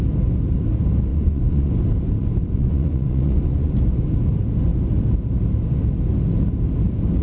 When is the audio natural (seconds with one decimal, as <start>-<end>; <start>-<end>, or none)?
0.0-1.1; 1.7-2.2; 3.8-7.2